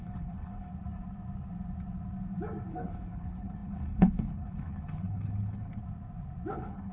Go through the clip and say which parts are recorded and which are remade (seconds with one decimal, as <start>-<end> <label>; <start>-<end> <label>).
0.0-0.7 remade; 0.7-2.7 recorded; 2.7-5.8 remade; 5.8-6.5 recorded; 6.5-6.9 remade